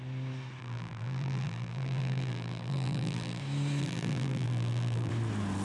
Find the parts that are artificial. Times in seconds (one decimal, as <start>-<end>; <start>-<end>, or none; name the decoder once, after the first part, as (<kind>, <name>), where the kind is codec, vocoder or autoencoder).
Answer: 0.6-3.4 (vocoder, BigVGAN v2); 3.8-5.1